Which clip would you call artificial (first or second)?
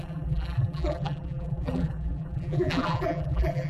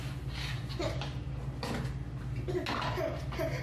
first